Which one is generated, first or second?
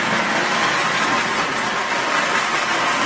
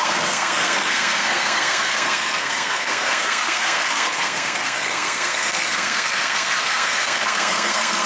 second